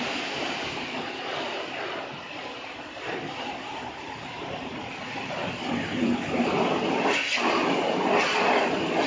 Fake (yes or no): no